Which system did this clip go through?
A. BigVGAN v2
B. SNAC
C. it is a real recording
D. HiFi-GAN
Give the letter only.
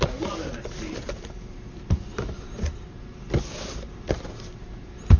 C